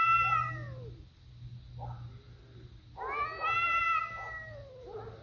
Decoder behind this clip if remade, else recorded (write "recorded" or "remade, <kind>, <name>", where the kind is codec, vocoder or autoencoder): recorded